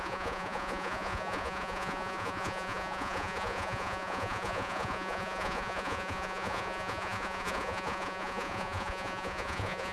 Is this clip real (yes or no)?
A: no